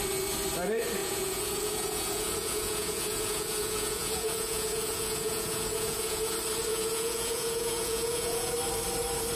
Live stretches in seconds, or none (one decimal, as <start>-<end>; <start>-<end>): 0.0-1.0; 6.3-6.7; 8.5-9.4